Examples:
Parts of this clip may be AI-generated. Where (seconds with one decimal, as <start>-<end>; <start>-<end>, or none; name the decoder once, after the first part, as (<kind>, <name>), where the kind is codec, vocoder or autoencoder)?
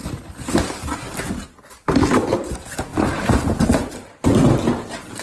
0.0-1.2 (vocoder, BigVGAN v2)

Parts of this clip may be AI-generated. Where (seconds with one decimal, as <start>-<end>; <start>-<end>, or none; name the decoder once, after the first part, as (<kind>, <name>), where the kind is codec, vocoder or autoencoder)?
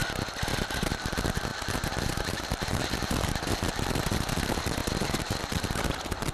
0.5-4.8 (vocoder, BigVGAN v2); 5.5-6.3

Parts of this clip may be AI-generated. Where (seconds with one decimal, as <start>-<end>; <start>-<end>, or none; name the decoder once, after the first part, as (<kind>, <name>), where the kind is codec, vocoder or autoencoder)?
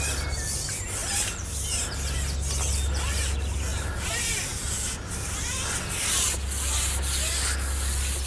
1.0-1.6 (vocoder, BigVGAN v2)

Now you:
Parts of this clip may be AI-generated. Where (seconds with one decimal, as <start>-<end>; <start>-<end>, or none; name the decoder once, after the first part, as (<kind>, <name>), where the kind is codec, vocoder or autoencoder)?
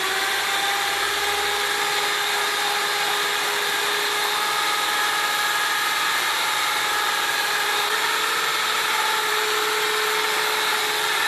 0.0-8.5 (vocoder, BigVGAN v2); 9.3-11.3